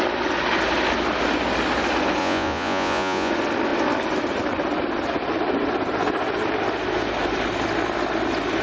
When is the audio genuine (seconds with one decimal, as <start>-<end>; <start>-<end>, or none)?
0.0-2.2; 3.3-8.6

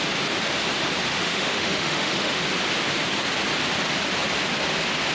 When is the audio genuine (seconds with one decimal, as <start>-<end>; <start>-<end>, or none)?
0.0-1.1; 2.4-5.1